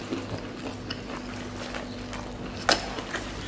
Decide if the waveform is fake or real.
real